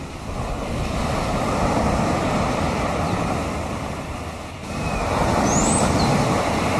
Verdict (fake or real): real